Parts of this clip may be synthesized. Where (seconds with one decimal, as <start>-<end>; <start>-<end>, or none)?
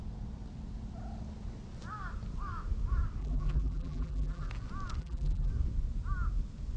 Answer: 3.2-4.5; 5.0-5.5